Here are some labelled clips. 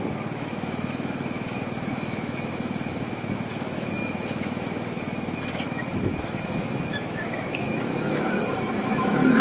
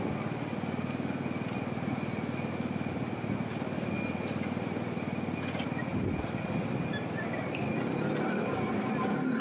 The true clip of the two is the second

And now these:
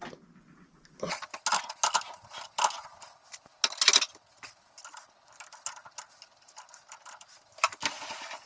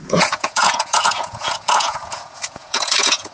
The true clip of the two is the first